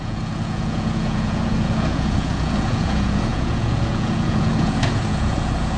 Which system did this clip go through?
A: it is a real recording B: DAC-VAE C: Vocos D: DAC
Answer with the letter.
C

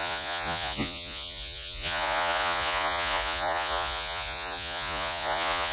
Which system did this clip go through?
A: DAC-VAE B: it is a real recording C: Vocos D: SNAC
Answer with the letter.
C